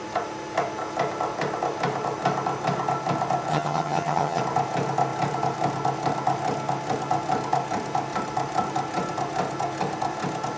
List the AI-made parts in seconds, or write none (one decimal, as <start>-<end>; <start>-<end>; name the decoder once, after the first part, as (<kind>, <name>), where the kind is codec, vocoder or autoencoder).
3.5-4.4 (vocoder, HiFi-GAN)